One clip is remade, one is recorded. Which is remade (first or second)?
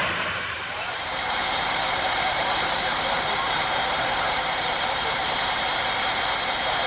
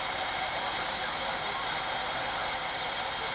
first